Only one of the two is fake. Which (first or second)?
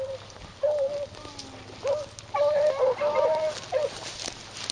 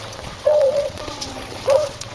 second